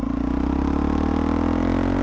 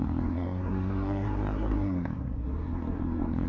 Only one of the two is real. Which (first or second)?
first